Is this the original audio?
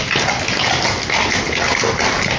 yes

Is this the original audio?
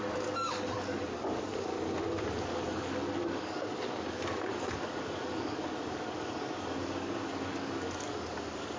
no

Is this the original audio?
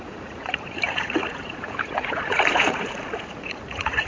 no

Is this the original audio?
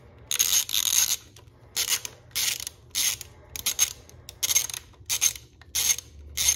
yes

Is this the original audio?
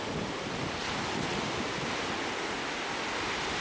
yes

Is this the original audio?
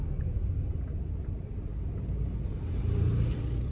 yes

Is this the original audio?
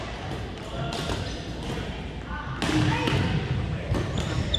yes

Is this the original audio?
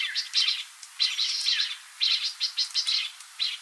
yes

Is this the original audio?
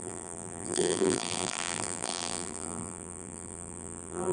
no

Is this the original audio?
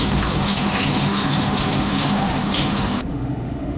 no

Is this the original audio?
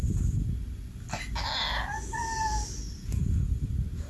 yes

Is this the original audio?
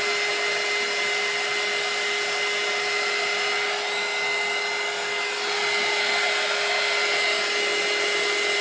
yes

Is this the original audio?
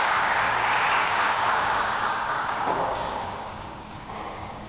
no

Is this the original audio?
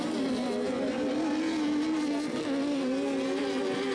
yes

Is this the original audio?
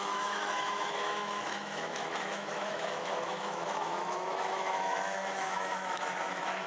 no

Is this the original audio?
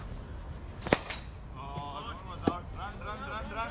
yes